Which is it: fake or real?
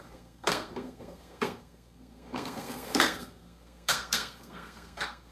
fake